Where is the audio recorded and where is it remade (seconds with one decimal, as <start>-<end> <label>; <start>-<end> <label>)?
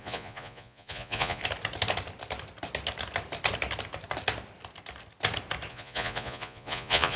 0.0-1.4 remade; 1.4-5.7 recorded; 5.7-7.2 remade